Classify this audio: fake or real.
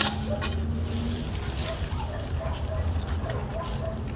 real